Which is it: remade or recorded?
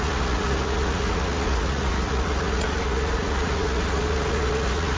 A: remade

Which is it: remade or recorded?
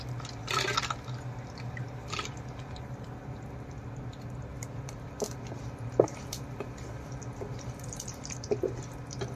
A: recorded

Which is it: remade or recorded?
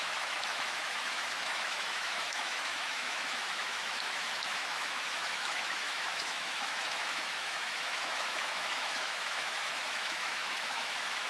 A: remade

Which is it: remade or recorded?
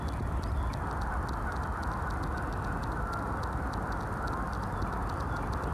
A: recorded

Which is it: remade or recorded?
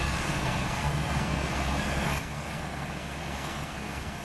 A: remade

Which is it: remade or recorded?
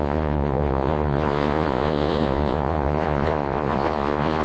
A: remade